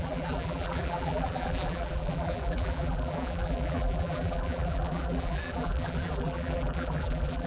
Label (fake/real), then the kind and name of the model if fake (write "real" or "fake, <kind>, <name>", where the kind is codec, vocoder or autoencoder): fake, vocoder, BigVGAN v2